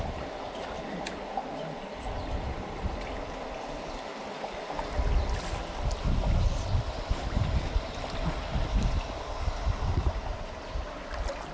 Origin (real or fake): real